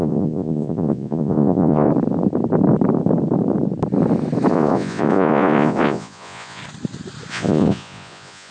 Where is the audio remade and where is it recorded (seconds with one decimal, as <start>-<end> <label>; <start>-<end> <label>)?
0.0-1.9 remade; 1.9-4.5 recorded; 4.5-6.6 remade; 6.6-7.3 recorded; 7.3-8.5 remade